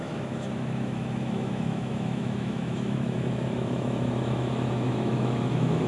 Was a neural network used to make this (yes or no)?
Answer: yes